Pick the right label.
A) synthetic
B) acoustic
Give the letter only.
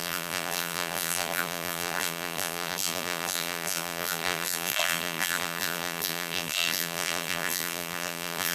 A